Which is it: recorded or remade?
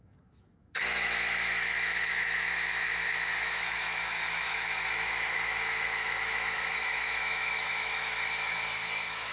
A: remade